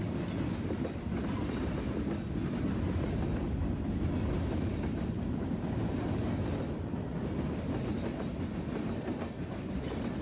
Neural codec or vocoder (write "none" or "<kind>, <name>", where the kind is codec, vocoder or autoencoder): none